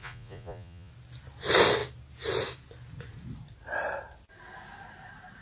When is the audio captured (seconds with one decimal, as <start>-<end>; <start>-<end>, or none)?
0.9-5.4